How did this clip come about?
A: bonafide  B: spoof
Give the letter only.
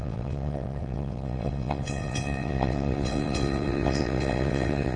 B